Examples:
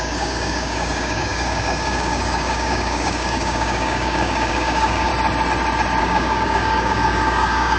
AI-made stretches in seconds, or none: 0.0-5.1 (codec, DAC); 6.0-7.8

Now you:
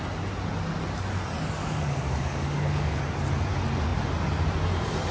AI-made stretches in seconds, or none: 1.6-3.0 (codec, DAC)

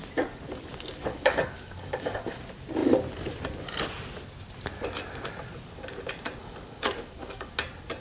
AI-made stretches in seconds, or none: 1.1-2.4 (codec, DAC); 6.4-7.5

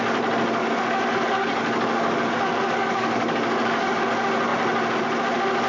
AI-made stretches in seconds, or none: 0.6-4.0 (codec, DAC)

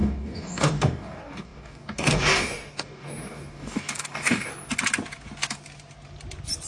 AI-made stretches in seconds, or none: 0.0-4.5 (codec, DAC)